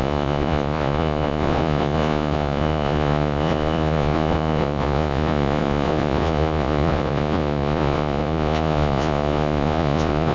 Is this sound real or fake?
fake